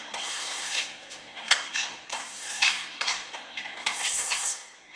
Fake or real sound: fake